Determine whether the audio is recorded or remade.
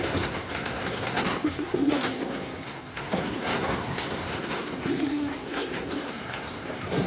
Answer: remade